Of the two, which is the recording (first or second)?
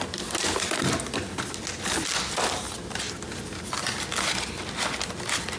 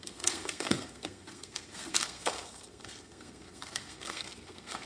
first